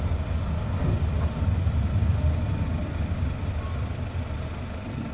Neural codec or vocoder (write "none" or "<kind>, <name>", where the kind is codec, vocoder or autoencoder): none